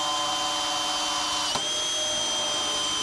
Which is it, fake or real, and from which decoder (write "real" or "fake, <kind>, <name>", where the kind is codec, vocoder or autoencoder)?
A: real